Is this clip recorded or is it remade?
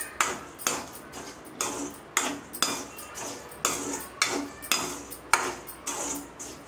recorded